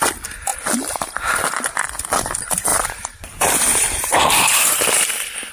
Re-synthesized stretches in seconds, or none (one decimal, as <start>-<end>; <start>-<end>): 2.7-5.5